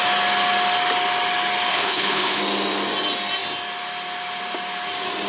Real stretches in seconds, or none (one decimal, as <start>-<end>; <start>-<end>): 0.0-1.7; 2.4-5.3